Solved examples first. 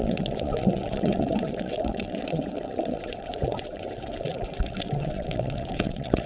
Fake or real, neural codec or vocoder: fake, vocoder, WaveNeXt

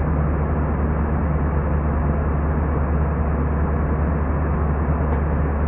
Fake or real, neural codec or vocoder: real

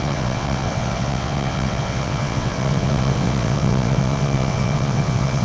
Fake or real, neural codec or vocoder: fake, vocoder, WaveNeXt